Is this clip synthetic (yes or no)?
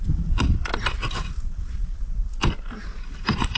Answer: no